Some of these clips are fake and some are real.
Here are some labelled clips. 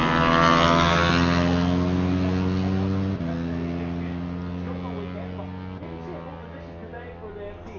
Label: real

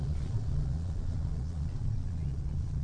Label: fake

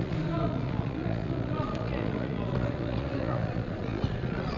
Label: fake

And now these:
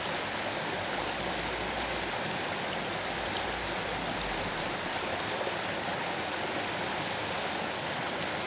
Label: real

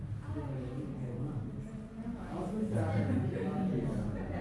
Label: real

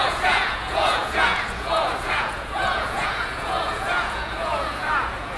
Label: fake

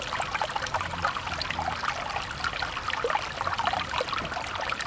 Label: real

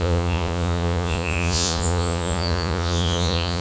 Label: fake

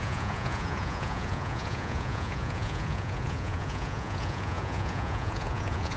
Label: fake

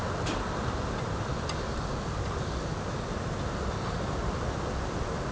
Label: real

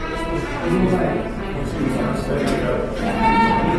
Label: real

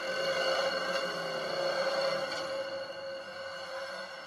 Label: real